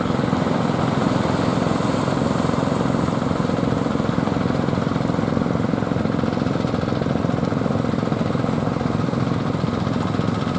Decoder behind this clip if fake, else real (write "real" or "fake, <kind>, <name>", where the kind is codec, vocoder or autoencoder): real